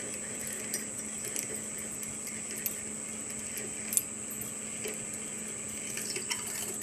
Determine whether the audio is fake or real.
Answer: real